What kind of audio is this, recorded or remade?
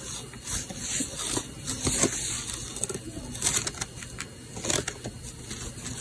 recorded